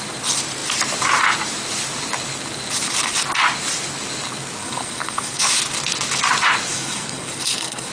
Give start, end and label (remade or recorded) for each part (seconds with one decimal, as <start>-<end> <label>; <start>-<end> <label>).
0.0-4.6 recorded; 4.6-5.5 remade; 5.5-6.7 recorded; 6.7-7.9 remade